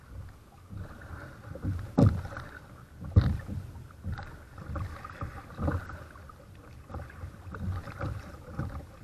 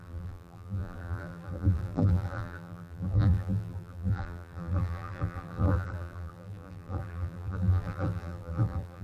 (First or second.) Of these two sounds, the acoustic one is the first